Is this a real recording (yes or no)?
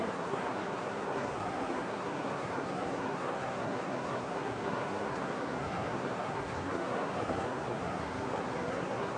no